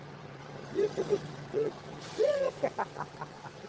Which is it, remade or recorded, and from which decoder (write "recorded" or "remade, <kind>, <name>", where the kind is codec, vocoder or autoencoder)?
remade, vocoder, HiFi-GAN